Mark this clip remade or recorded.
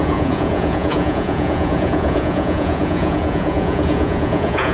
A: remade